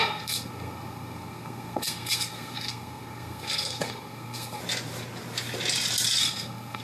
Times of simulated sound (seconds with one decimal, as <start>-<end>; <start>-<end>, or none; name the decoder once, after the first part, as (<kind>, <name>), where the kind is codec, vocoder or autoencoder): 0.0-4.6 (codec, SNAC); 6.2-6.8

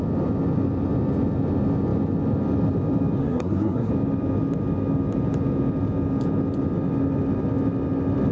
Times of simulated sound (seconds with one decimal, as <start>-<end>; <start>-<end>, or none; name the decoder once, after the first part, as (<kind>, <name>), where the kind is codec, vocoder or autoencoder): 3.2-3.9 (codec, SNAC)

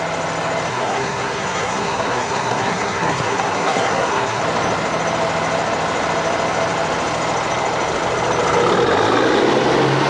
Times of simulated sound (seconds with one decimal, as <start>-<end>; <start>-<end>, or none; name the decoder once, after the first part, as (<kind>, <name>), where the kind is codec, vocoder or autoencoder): 0.7-4.4 (codec, SNAC)

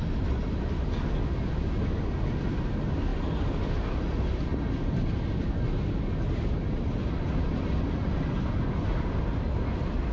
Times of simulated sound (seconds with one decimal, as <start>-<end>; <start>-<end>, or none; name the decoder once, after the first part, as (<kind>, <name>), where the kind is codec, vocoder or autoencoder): none